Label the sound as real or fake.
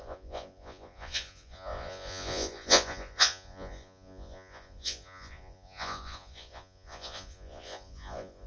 fake